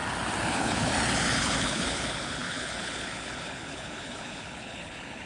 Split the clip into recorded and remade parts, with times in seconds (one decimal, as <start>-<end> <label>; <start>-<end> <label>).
0.0-0.5 recorded; 0.5-0.9 remade; 0.9-1.4 recorded; 1.4-5.3 remade